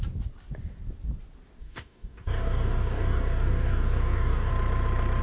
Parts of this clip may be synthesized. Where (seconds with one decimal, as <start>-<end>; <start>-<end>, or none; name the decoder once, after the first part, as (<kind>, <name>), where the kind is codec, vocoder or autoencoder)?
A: 1.6-4.5 (codec, DAC)

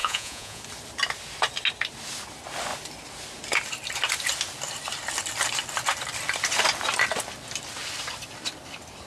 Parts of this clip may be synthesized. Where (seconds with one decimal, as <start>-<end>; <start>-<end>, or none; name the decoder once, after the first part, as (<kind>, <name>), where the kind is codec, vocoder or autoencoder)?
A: 0.0-0.6 (vocoder, Vocos)

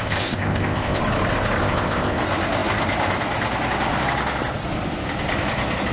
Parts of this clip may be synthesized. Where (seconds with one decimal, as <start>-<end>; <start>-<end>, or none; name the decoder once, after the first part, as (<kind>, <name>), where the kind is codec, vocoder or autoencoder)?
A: 0.0-1.0 (codec, ZipCodec); 1.6-2.2

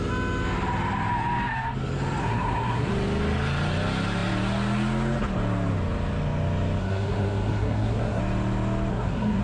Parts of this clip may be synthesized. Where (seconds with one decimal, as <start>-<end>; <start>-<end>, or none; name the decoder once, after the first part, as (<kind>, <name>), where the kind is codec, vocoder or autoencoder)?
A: 2.2-2.9 (codec, SNAC); 6.8-8.2; 8.9-9.4

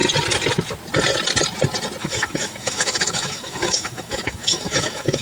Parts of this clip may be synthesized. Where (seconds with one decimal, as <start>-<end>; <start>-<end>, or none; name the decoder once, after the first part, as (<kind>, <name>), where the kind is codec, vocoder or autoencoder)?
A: 2.0-5.2 (autoencoder, DAC-VAE)